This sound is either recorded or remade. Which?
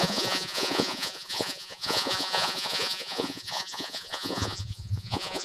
remade